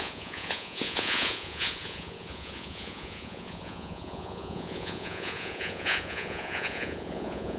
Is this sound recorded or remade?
remade